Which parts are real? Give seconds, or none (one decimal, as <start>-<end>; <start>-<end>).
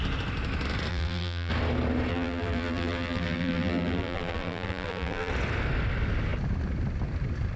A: 0.0-0.9; 1.5-2.1; 5.3-7.6